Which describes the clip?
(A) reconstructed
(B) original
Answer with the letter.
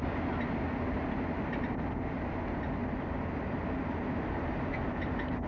B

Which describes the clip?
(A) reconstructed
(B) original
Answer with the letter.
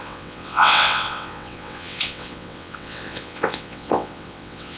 A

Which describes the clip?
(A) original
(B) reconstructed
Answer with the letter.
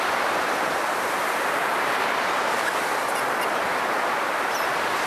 B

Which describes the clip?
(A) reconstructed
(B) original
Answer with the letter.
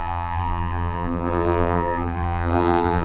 A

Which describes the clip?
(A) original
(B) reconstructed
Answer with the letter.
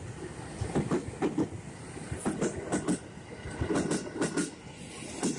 A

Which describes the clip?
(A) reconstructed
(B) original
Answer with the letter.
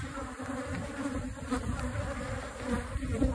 A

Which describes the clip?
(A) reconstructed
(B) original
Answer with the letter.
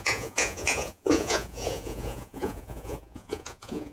A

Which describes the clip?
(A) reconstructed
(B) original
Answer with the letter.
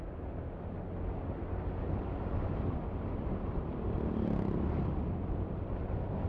B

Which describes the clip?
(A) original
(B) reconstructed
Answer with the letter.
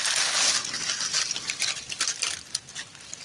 A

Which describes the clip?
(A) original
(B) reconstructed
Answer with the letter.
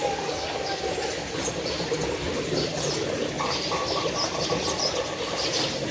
A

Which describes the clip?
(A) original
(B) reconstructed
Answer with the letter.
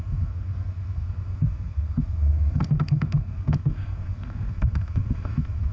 B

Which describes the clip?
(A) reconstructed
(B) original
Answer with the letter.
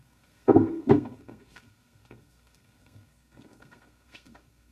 A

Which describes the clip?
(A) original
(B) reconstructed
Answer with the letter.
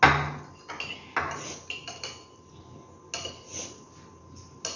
A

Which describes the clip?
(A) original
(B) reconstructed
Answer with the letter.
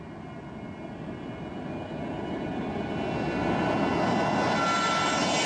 A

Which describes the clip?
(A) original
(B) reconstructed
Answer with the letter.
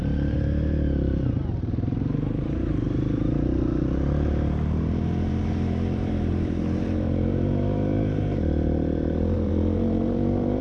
B